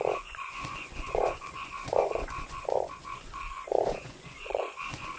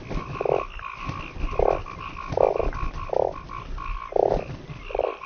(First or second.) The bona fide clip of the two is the second